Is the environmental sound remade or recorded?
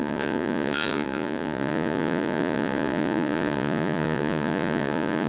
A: remade